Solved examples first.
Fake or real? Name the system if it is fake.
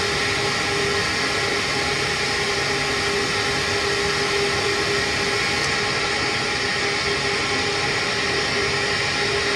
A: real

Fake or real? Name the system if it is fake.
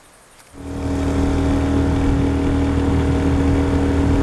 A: real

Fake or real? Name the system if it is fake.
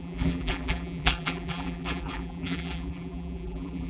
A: fake, vocoder, BigVGAN v2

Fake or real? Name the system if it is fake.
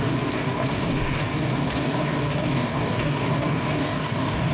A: fake, codec, DAC